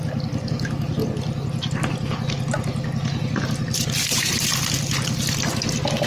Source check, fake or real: real